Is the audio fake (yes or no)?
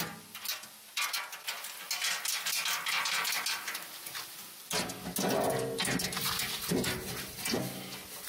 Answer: no